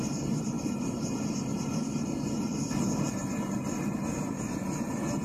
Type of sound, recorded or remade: recorded